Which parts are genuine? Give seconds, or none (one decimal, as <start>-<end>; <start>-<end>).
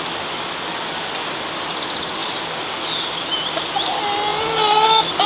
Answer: 0.0-4.3